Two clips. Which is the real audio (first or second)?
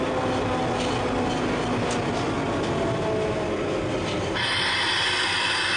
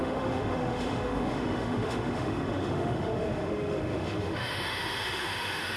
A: first